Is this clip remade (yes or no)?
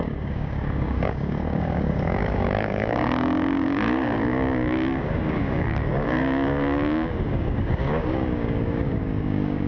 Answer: yes